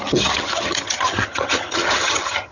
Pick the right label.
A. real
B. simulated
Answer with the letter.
B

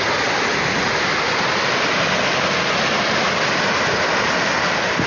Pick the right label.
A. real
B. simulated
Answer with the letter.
A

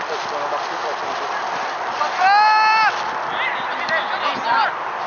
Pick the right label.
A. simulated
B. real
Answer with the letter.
B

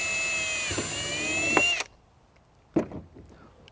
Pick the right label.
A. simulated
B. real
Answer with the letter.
B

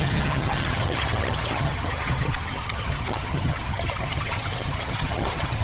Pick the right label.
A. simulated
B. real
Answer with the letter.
A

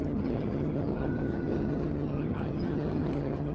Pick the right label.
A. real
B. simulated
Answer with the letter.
B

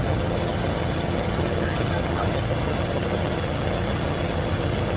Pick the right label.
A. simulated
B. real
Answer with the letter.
A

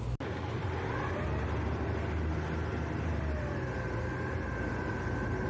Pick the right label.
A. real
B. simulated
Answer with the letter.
A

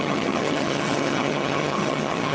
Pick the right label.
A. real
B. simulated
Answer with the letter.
B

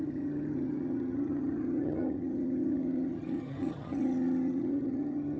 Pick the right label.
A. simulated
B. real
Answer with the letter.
A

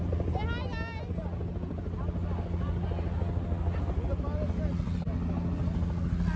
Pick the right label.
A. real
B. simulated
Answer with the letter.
A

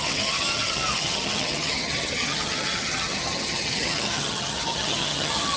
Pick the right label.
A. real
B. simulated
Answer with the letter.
B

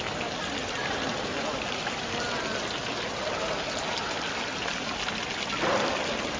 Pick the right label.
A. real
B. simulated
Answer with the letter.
A